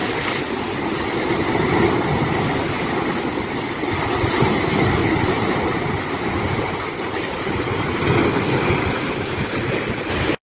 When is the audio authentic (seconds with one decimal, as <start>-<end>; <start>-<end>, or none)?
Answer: 0.0-5.0; 8.0-10.4